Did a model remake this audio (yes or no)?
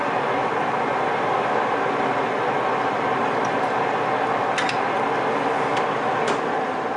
no